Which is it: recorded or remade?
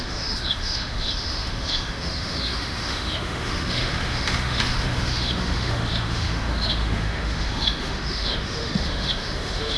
remade